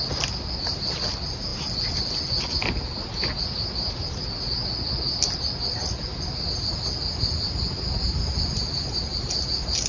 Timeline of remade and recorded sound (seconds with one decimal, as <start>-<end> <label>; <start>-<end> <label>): 0.0-9.9 recorded

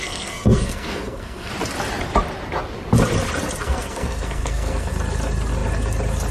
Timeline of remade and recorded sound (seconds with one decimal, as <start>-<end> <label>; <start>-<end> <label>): 0.0-1.5 remade; 1.5-3.6 recorded; 3.6-4.9 remade; 4.9-6.3 recorded